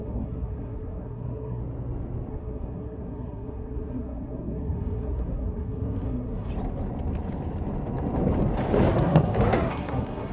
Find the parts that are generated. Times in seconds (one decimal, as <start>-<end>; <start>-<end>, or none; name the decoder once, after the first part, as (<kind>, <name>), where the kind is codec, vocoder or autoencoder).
0.0-1.6 (codec, SNAC); 2.3-6.5; 8.9-10.3